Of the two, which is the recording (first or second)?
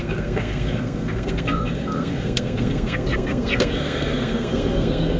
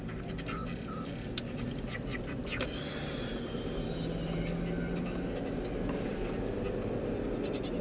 second